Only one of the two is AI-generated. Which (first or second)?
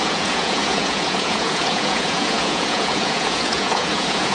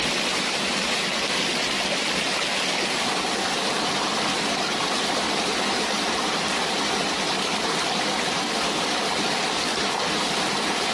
first